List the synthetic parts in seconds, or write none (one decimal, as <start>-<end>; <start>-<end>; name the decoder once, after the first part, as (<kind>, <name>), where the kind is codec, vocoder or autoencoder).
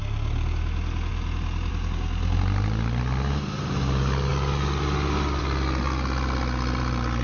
none